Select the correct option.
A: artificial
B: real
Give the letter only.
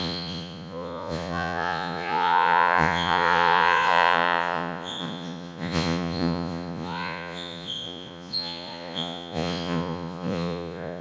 A